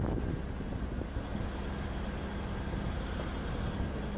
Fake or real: real